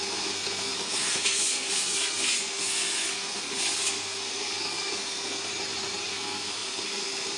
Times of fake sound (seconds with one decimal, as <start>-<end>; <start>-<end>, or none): 0.0-5.5; 6.1-7.4